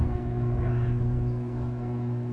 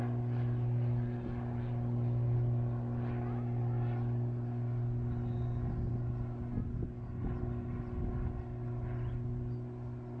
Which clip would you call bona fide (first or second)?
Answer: second